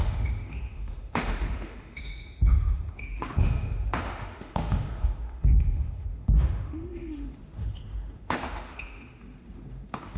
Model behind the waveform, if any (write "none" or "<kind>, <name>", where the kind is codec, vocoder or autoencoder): autoencoder, DAC-VAE